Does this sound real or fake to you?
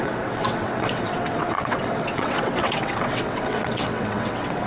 fake